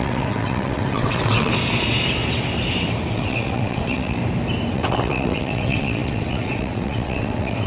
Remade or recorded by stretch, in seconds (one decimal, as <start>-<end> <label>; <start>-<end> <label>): 0.0-1.5 remade; 1.5-3.1 recorded; 3.1-4.2 remade; 4.2-4.7 recorded; 4.7-7.7 remade